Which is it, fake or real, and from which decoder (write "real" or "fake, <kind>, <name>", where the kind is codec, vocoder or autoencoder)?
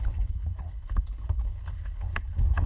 fake, codec, HILCodec